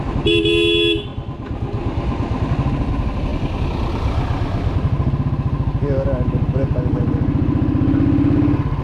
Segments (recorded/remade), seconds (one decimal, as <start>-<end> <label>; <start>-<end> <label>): 0.0-8.8 recorded